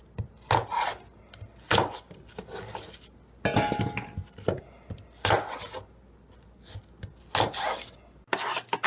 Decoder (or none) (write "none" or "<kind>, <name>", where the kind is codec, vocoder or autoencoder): none